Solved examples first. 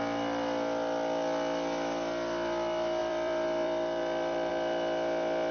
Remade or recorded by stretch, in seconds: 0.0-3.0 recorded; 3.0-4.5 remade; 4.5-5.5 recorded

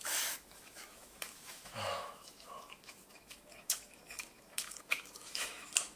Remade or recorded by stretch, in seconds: 0.0-6.0 remade

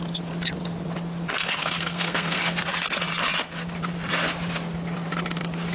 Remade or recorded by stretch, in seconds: 0.0-1.6 recorded; 1.6-2.4 remade; 2.4-5.7 recorded